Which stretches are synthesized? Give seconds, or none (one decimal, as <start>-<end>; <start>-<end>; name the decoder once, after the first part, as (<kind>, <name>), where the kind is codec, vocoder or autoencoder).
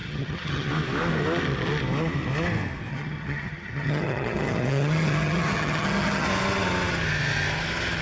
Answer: 0.0-0.7 (vocoder, HiFi-GAN); 2.9-6.3